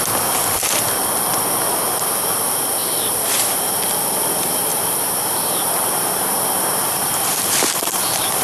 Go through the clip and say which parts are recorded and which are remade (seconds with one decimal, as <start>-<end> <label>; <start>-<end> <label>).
0.0-2.8 recorded; 2.8-3.8 remade; 3.8-4.7 recorded; 4.7-8.4 remade